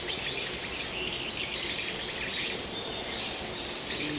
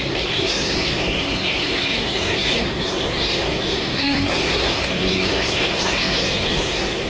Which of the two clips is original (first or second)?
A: first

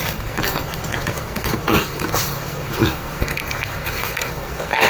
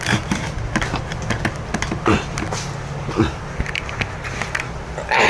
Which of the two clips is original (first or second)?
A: second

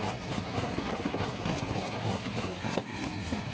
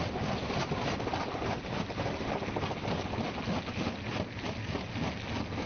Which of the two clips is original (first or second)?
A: second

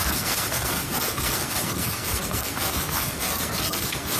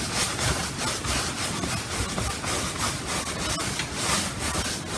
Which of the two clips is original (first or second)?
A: second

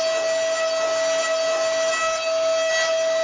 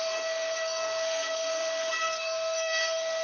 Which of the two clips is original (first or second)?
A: first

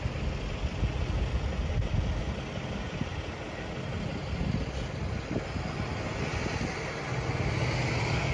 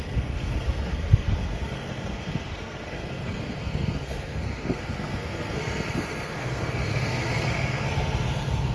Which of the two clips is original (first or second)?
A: first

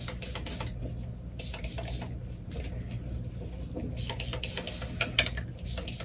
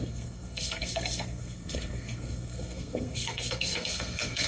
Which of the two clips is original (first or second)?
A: first